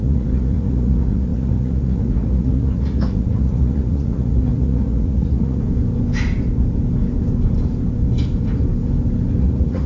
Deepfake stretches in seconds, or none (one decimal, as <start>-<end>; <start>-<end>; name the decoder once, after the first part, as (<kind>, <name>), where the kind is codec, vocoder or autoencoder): 0.0-5.6 (vocoder, Vocos); 9.4-9.9